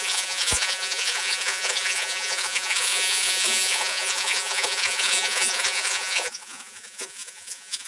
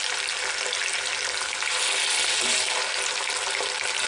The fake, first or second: first